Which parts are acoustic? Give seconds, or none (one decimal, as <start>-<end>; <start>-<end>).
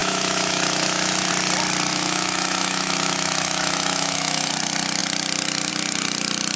1.3-1.9; 4.5-6.6